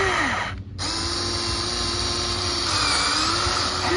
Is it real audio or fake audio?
real